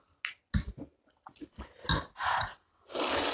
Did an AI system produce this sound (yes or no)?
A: no